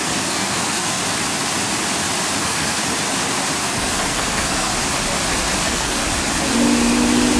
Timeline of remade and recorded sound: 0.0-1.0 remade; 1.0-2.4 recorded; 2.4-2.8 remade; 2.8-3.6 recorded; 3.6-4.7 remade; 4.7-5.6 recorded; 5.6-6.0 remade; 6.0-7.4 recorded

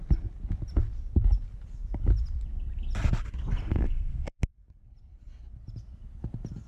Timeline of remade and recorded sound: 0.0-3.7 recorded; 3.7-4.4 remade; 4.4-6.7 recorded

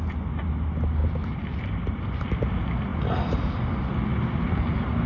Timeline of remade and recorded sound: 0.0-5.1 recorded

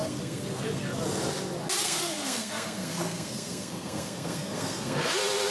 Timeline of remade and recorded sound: 0.0-1.0 remade; 1.0-1.8 recorded; 1.8-5.1 remade; 5.1-5.5 recorded